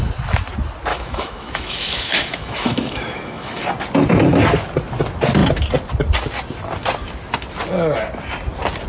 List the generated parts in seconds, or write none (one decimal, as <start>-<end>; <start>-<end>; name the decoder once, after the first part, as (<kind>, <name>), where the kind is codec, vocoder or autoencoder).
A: 0.9-3.6 (autoencoder, DAC-VAE)